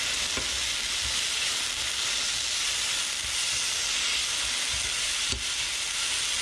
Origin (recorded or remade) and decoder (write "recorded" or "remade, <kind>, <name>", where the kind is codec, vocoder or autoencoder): recorded